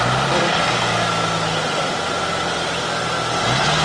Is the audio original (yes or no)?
yes